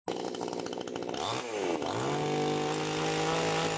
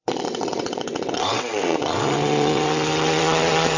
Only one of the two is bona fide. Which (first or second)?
first